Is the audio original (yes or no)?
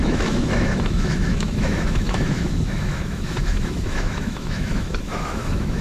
no